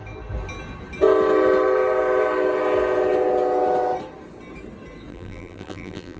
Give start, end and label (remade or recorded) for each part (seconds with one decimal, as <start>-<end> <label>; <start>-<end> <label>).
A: 0.0-5.1 recorded; 5.1-6.2 remade